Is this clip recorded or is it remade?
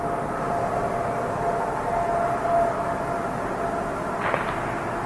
recorded